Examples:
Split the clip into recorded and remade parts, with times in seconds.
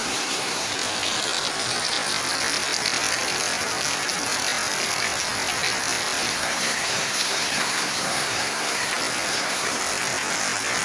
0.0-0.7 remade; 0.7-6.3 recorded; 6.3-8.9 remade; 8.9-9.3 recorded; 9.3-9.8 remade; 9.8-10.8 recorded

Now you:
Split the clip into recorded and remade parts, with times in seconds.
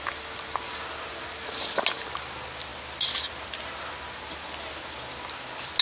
0.0-5.8 recorded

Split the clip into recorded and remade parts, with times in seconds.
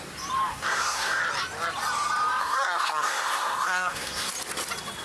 0.0-0.5 recorded; 0.5-1.2 remade; 1.2-2.4 recorded; 2.4-4.3 remade; 4.3-5.0 recorded